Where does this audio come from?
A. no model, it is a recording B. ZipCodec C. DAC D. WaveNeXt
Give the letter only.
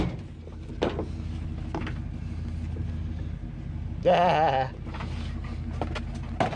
A